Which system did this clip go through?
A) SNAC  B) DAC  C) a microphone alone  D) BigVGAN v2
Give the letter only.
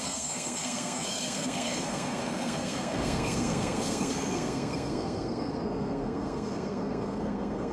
A